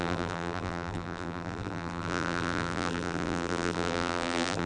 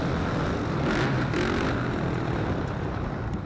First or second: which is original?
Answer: second